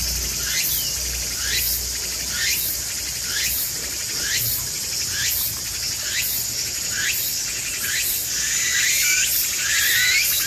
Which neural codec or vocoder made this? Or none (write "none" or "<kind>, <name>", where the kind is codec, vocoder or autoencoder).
none